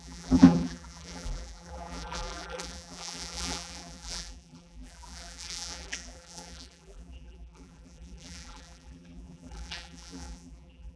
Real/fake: fake